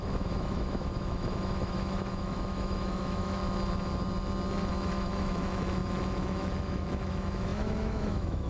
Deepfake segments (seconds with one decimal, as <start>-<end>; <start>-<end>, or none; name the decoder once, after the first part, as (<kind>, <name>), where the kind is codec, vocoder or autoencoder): 0.0-3.4 (autoencoder, DAC-VAE); 4.7-8.5